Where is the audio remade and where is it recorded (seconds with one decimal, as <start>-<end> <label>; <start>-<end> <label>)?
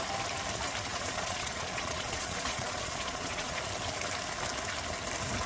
0.0-0.9 recorded; 0.9-3.6 remade; 3.6-5.5 recorded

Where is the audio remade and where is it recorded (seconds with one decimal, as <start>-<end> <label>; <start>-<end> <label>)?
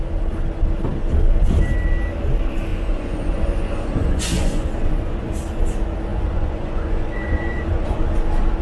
0.0-2.7 recorded; 2.7-5.3 remade; 5.3-6.1 recorded; 6.1-8.0 remade; 8.0-8.6 recorded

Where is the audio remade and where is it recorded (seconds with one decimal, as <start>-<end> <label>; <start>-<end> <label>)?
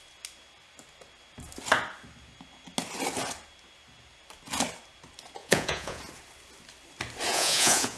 0.0-5.4 recorded; 5.4-6.0 remade; 6.0-7.3 recorded; 7.3-8.0 remade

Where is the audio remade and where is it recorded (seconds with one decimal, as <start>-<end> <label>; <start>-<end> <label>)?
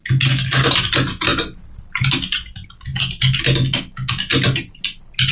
0.0-5.3 recorded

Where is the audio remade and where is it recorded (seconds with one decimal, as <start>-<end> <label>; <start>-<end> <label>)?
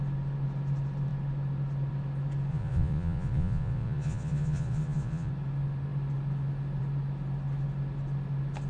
0.0-2.5 recorded; 2.5-5.3 remade; 5.3-8.7 recorded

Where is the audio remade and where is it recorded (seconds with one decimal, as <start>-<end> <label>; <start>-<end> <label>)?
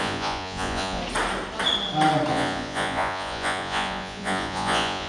0.0-1.0 remade; 1.0-2.3 recorded; 2.3-5.1 remade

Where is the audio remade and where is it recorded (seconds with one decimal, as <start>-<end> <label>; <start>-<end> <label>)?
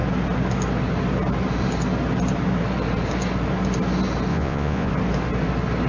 0.0-4.3 recorded; 4.3-4.9 remade; 4.9-5.9 recorded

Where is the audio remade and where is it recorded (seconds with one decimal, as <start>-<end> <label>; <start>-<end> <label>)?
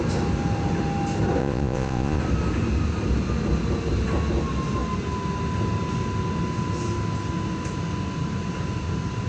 0.0-1.4 recorded; 1.4-2.2 remade; 2.2-9.3 recorded